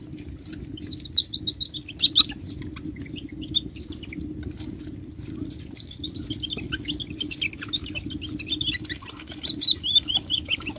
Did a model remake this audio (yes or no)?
no